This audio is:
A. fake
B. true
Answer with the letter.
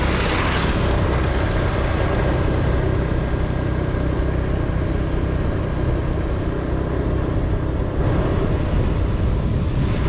B